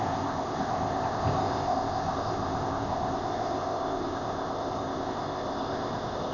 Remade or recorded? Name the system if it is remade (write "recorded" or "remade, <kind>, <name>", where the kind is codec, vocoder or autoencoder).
remade, codec, ZipCodec